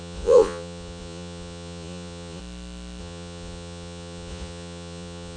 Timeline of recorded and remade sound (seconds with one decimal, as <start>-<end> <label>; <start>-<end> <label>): 0.0-2.4 remade; 2.4-3.0 recorded; 3.0-5.4 remade